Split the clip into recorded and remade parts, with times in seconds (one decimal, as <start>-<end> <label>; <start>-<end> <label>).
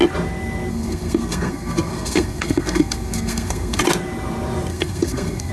0.0-0.7 recorded; 0.7-3.8 remade; 3.8-4.7 recorded; 4.7-5.5 remade